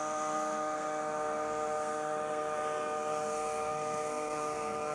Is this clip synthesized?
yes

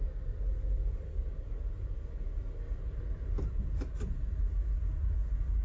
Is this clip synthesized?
no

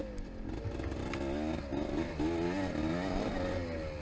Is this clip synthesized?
no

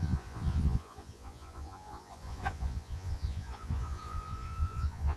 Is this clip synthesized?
yes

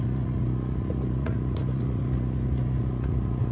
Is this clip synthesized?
yes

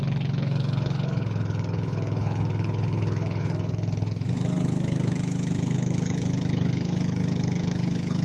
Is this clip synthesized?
yes